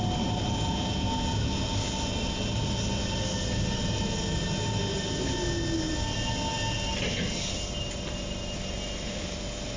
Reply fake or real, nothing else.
real